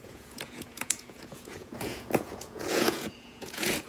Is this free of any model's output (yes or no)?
no